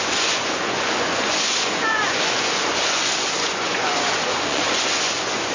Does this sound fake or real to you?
fake